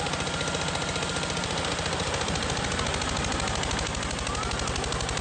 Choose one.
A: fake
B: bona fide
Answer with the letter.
B